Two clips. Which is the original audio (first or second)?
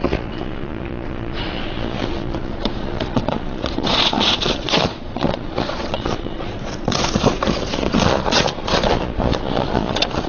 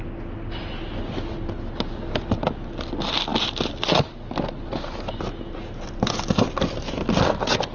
second